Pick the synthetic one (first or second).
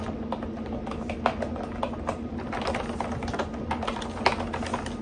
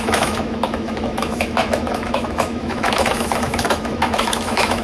second